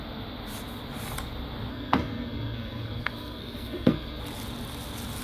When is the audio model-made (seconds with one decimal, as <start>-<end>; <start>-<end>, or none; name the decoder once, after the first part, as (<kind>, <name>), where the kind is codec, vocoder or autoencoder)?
1.7-4.2 (codec, SNAC)

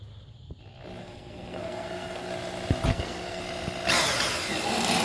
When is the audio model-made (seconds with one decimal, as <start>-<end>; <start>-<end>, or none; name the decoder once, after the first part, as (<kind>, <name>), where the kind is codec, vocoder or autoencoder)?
1.0-2.3 (codec, SNAC); 2.9-3.4